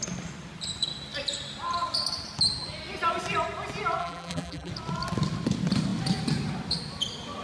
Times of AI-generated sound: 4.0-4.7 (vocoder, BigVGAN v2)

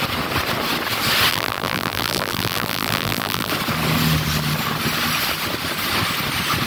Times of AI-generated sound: 1.3-3.5 (vocoder, BigVGAN v2)

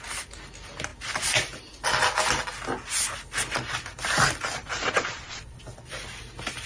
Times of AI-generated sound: 4.6-5.6 (vocoder, Vocos)

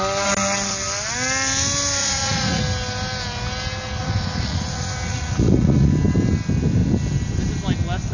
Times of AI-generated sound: 2.0-2.6 (vocoder, Vocos); 4.0-5.9